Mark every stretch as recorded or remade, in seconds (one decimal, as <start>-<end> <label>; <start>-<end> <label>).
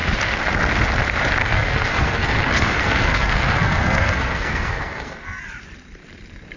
0.0-1.4 recorded; 1.4-5.4 remade; 5.4-6.6 recorded